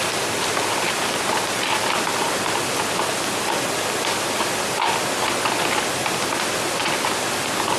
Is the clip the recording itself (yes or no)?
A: yes